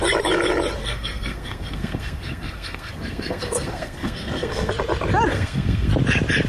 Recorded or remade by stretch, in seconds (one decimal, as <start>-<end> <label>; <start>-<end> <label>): 0.0-0.8 recorded; 0.8-4.7 remade; 4.7-5.3 recorded; 5.3-5.9 remade; 5.9-6.5 recorded